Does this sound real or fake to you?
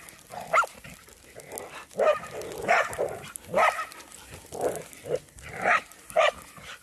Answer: real